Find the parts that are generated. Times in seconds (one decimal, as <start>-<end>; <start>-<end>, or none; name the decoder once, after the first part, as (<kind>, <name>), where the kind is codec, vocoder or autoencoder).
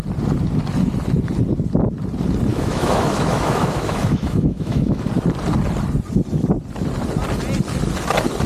2.5-5.1 (autoencoder, DAC-VAE)